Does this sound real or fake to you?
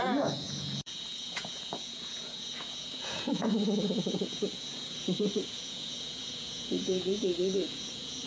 fake